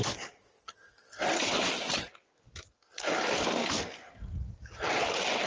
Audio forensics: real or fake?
real